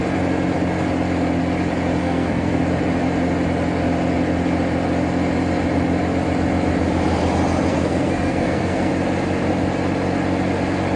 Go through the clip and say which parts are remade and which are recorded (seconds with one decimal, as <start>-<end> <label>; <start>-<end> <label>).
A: 0.0-2.0 recorded; 2.0-2.6 remade; 2.6-7.7 recorded; 7.7-8.9 remade; 8.9-11.0 recorded